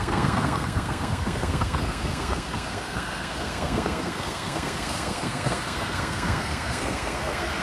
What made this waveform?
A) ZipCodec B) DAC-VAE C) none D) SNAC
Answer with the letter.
D